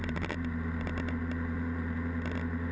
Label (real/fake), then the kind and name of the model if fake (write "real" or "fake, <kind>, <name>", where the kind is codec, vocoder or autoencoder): real